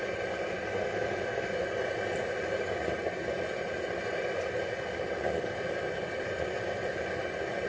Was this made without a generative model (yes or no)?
yes